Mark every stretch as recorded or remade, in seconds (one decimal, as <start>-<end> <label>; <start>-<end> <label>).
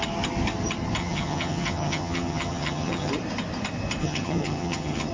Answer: 0.0-1.0 recorded; 1.0-3.1 remade; 3.1-4.0 recorded; 4.0-5.1 remade